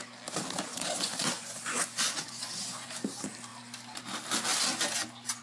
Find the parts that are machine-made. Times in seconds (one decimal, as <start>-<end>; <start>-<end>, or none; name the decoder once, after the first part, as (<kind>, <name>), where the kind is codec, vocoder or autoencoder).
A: 0.7-2.9 (vocoder, Vocos)